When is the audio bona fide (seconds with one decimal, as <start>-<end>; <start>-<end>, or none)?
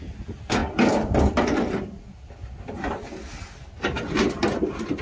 0.0-5.0